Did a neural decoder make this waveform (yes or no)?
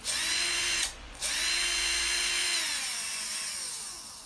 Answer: yes